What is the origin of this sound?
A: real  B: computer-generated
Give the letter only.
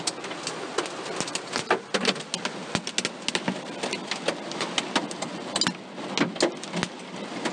A